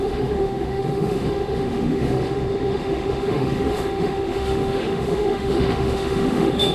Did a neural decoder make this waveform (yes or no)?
yes